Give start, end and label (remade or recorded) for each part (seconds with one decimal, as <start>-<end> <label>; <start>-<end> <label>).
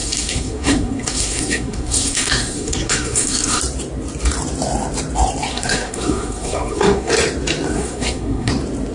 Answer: 0.0-3.6 remade; 3.6-5.5 recorded; 5.5-7.1 remade; 7.1-7.7 recorded; 7.7-8.5 remade; 8.5-8.9 recorded